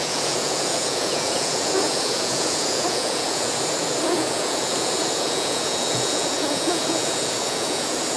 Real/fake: fake